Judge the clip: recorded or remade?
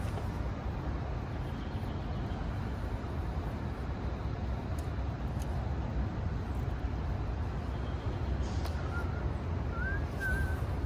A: recorded